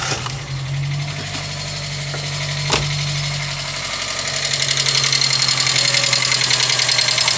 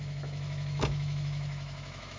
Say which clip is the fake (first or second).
second